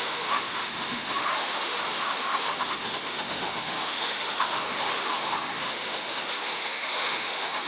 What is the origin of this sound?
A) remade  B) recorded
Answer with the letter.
A